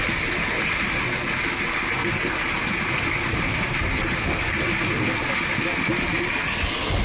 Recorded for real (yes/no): yes